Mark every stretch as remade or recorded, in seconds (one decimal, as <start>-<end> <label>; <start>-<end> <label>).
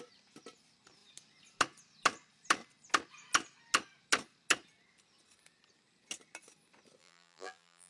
0.0-7.0 recorded; 7.0-7.9 remade